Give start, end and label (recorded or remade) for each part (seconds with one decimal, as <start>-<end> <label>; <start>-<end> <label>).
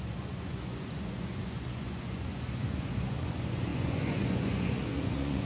0.0-5.5 remade